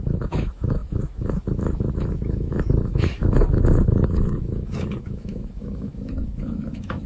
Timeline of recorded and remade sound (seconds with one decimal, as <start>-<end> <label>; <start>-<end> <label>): 0.0-7.1 remade